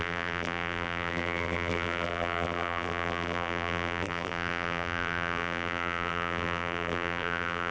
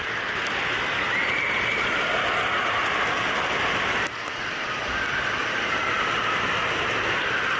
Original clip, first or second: second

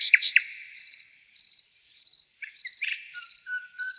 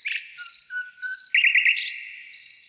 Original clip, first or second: second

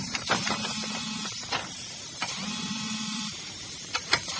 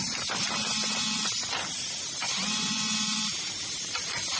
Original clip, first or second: second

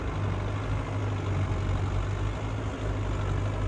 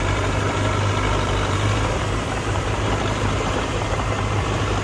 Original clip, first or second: first